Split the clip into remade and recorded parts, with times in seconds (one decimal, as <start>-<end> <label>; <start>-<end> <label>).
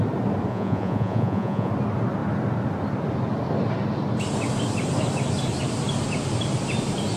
0.0-0.5 recorded; 0.5-1.7 remade; 1.7-7.2 recorded